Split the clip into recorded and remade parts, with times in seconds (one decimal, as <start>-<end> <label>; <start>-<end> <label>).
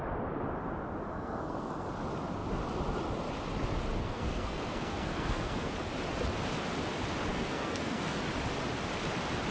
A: 0.0-1.1 recorded; 1.1-1.9 remade; 1.9-3.9 recorded; 3.9-5.7 remade; 5.7-7.3 recorded; 7.3-8.2 remade; 8.2-9.5 recorded